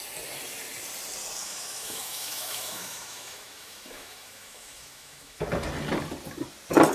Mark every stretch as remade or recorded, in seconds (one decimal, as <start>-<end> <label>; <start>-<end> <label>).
0.0-1.4 recorded; 1.4-5.4 remade; 5.4-6.9 recorded